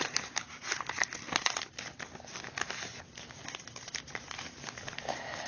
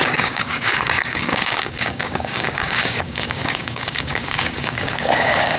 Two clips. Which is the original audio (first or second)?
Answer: first